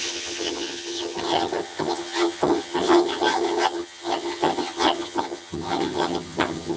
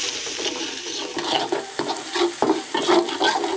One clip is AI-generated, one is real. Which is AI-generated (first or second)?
first